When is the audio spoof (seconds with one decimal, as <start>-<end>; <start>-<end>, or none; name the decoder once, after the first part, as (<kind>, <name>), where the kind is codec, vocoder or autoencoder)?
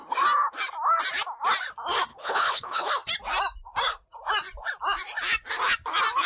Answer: 2.1-2.9 (codec, HILCodec)